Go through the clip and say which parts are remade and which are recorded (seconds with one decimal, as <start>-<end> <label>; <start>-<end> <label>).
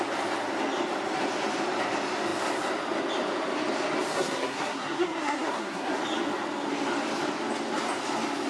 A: 0.0-4.1 recorded; 4.1-6.0 remade; 6.0-8.5 recorded